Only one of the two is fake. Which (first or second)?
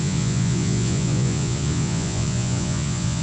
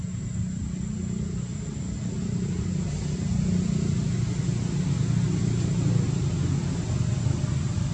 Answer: first